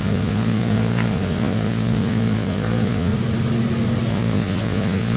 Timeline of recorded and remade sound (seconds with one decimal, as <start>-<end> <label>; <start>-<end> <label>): 0.0-3.1 remade; 3.1-4.1 recorded; 4.1-5.2 remade